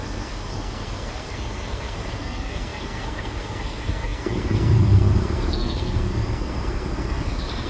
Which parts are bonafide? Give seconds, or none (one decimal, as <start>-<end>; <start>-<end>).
none